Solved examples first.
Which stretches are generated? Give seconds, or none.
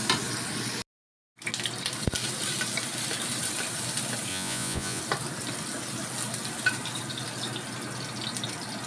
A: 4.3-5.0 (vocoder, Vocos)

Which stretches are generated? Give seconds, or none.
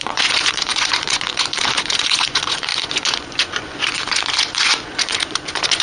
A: 0.0-5.8 (vocoder, Vocos)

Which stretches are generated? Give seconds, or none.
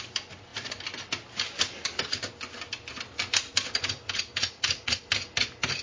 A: 4.4-5.0 (vocoder, Vocos)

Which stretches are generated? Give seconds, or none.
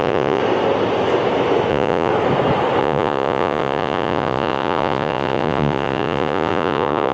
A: 0.0-0.4 (vocoder, Vocos); 1.7-2.1; 2.8-7.1